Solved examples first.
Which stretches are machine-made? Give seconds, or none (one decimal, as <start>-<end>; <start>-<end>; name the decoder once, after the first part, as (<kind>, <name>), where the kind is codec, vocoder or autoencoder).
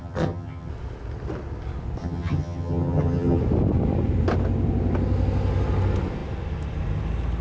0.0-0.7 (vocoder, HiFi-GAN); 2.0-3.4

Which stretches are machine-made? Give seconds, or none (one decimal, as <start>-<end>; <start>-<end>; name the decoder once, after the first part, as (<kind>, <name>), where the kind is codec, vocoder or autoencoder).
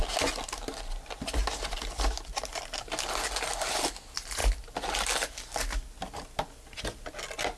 none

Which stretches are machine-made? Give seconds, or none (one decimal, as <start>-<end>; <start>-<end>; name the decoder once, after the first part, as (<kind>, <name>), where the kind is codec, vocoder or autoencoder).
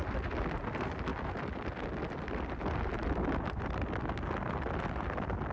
none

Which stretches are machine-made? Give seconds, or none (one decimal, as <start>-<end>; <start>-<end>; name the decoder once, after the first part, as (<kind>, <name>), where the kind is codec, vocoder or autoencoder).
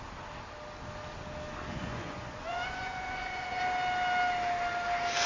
1.7-3.6 (vocoder, Vocos)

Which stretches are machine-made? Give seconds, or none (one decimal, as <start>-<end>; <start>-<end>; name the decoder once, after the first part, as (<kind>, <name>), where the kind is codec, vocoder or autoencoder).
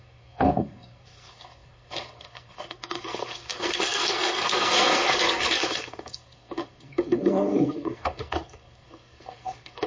0.0-9.9 (codec, SNAC)